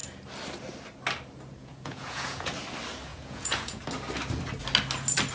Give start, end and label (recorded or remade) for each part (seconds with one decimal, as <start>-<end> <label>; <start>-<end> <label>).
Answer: 0.0-1.6 recorded; 1.6-2.5 remade; 2.5-3.1 recorded; 3.1-3.8 remade; 3.8-5.3 recorded